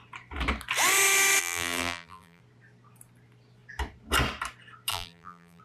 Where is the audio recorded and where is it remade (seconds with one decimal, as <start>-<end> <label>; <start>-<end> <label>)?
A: 0.0-1.4 recorded; 1.4-2.4 remade; 2.4-4.9 recorded; 4.9-5.6 remade